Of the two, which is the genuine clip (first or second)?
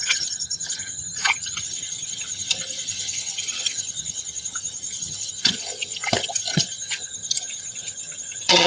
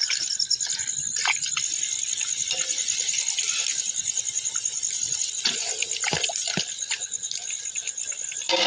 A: second